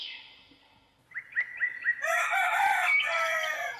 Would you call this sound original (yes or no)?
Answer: yes